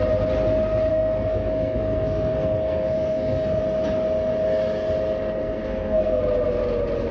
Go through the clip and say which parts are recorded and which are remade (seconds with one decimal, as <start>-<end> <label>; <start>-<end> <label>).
0.0-0.9 recorded; 0.9-3.6 remade; 3.6-5.4 recorded; 5.4-6.2 remade; 6.2-7.1 recorded